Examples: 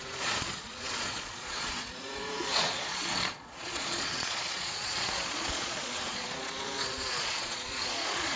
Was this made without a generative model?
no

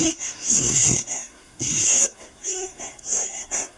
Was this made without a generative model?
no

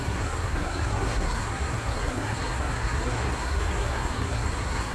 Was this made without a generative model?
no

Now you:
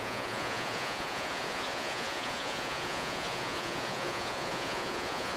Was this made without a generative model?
no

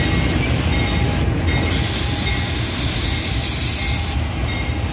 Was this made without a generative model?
yes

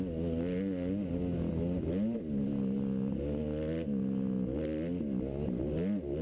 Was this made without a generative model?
yes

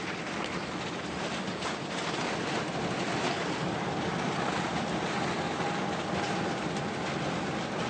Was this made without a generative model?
yes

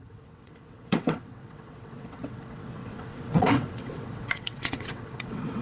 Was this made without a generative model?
no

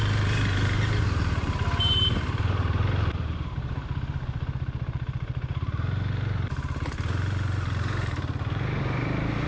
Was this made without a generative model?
no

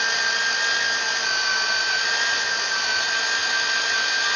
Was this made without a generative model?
yes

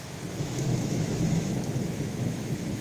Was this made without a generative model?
no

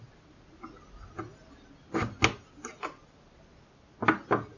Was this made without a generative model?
yes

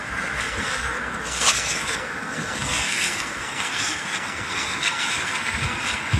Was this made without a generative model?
no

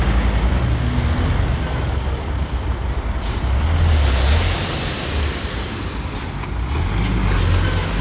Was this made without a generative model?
yes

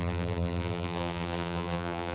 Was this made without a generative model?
no